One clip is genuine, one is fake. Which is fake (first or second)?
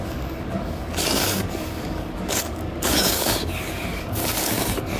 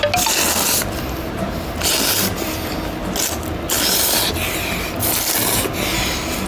first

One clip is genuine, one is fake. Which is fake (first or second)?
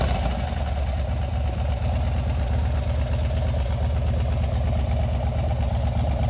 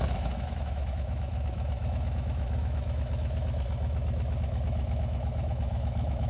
second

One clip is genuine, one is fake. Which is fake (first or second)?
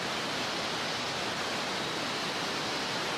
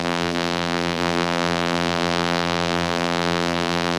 second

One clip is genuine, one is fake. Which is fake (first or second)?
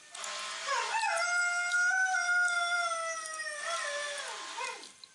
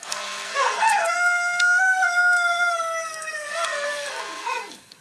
second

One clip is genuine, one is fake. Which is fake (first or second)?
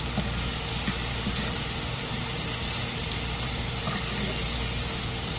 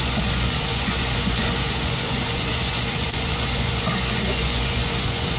second